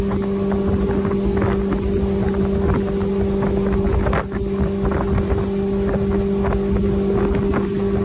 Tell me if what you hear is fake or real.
real